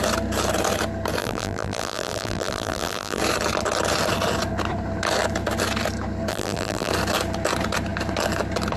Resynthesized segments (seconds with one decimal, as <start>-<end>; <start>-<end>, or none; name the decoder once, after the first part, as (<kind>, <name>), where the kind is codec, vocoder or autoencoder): 1.2-3.2 (vocoder, BigVGAN v2); 6.3-6.9